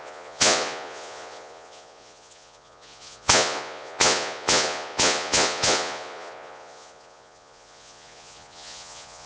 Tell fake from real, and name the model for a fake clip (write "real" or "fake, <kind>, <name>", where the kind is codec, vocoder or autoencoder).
fake, vocoder, Vocos